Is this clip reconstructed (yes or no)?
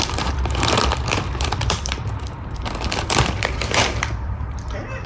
yes